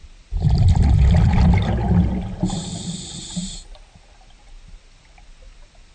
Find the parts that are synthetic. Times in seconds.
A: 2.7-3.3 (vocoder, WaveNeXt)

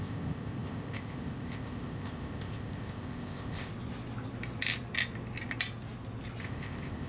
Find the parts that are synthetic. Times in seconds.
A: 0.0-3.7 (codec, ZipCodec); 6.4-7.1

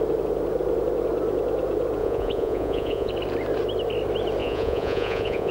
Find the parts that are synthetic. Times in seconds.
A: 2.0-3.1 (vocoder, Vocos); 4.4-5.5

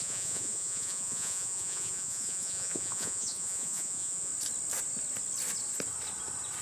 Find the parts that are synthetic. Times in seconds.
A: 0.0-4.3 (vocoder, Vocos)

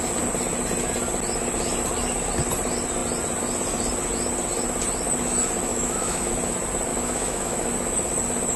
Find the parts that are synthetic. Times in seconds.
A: 5.7-6.3 (autoencoder, DAC-VAE); 6.9-7.7